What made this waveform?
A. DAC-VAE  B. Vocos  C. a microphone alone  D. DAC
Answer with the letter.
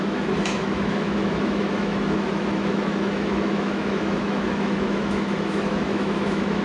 A